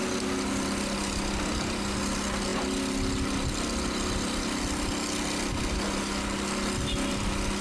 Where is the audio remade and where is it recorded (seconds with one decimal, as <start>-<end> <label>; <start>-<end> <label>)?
0.0-7.6 recorded